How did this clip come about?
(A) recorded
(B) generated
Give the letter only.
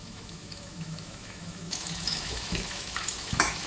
B